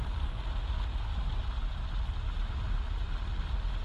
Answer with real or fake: real